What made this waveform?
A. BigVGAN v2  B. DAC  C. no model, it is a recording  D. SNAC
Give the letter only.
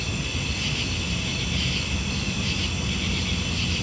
C